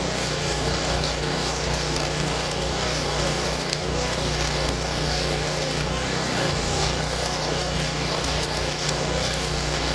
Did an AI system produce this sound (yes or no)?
yes